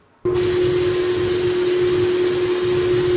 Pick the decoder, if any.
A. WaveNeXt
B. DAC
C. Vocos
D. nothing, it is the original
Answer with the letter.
D